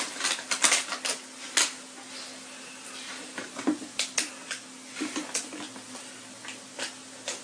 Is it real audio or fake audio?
real